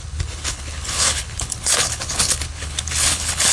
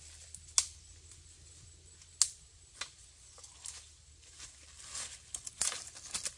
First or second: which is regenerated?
first